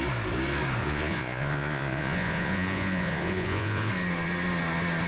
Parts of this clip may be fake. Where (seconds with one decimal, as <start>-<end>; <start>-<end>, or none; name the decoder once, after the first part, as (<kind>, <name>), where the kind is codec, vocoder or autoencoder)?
0.8-3.9 (vocoder, Vocos)

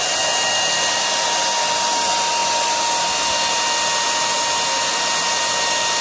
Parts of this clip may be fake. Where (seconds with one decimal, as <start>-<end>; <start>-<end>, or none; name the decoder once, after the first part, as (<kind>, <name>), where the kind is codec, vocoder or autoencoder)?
none

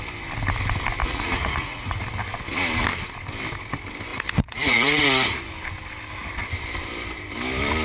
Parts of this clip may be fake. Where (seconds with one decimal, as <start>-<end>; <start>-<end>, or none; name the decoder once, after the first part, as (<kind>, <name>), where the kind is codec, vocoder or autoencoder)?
1.0-2.0 (vocoder, Vocos); 4.1-5.4

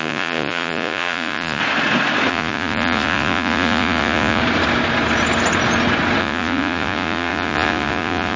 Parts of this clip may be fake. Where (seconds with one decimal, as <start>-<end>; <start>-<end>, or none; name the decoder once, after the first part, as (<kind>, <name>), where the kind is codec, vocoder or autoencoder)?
0.0-1.6 (vocoder, Vocos); 2.3-4.4; 6.2-8.4